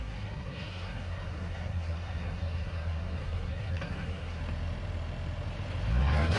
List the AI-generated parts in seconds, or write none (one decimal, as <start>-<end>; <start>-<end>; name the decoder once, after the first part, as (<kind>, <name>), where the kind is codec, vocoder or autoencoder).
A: 0.0-4.4 (codec, SNAC); 5.9-6.4